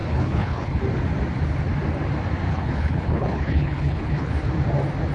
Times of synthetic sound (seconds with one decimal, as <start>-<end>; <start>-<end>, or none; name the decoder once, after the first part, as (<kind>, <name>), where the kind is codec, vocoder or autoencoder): 0.0-0.8 (codec, HILCodec); 2.5-4.3